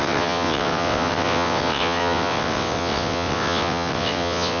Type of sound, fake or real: fake